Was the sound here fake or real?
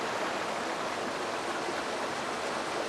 real